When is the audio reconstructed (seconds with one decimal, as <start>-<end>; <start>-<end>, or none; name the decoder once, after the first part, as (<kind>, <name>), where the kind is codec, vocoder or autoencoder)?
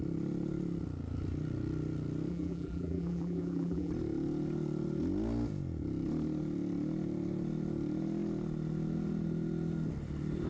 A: 2.3-3.9 (vocoder, BigVGAN v2)